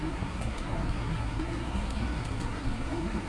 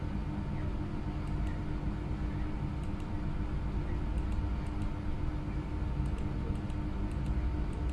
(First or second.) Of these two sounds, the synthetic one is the first